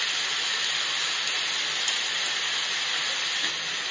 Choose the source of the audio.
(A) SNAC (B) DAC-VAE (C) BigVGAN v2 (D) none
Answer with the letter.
D